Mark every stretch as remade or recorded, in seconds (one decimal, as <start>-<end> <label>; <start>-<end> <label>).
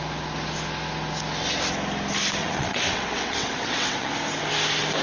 0.0-2.4 recorded; 2.4-4.1 remade; 4.1-5.0 recorded